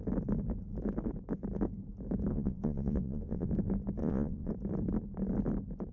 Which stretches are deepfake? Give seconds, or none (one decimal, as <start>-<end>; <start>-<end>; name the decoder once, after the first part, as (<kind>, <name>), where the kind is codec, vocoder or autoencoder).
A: 2.3-3.5 (vocoder, Vocos); 4.0-4.5